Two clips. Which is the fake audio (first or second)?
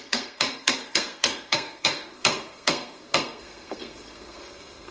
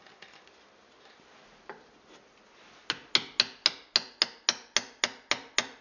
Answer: first